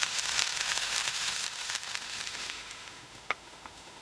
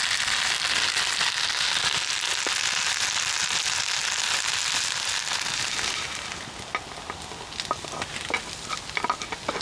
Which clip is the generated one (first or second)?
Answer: first